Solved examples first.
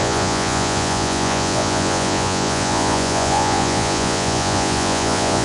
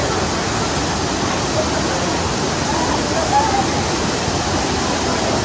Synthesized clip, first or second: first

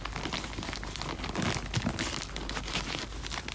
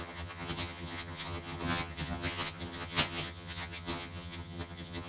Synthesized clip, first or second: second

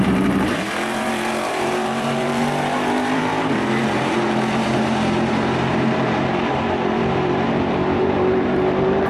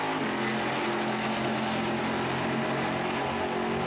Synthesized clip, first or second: first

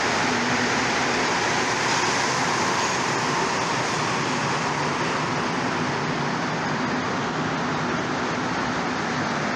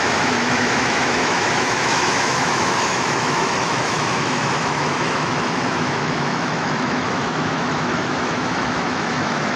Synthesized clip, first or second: second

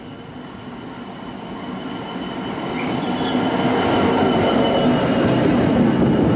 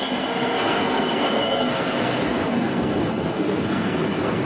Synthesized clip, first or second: second